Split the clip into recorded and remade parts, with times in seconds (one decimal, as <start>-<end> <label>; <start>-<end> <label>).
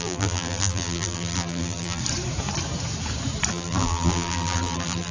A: 0.0-2.0 remade; 2.0-3.5 recorded; 3.5-5.1 remade